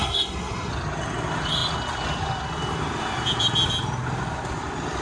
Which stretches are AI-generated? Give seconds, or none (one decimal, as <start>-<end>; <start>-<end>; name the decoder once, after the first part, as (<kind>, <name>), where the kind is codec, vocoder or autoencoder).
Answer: 0.0-0.7 (codec, SNAC)